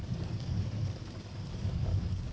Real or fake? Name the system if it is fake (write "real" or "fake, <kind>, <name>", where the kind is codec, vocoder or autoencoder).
fake, codec, DAC